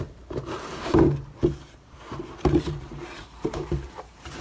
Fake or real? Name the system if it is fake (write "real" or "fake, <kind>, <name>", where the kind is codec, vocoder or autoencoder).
fake, vocoder, BigVGAN v2